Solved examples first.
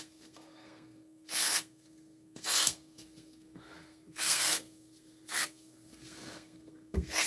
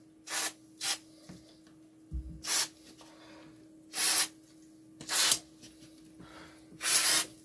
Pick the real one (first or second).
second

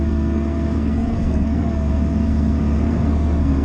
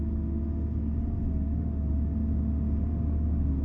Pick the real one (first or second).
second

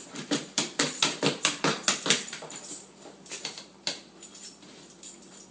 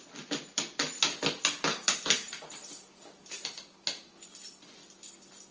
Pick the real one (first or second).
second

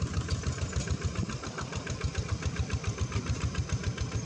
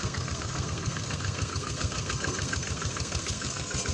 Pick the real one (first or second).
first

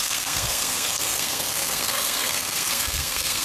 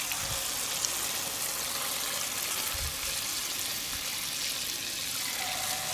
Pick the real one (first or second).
second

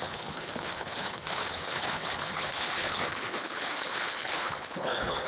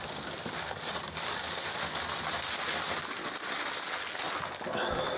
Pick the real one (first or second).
second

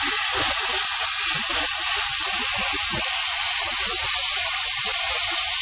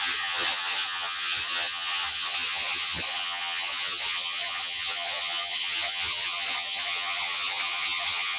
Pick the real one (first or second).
first